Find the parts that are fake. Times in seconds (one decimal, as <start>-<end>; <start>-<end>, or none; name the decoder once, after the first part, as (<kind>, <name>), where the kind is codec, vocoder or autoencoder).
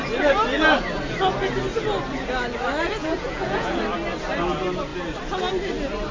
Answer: 3.0-3.8 (vocoder, Vocos)